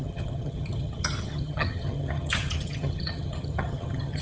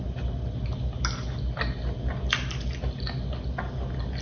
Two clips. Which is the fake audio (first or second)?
first